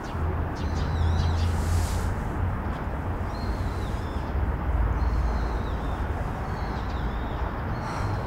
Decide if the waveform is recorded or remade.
recorded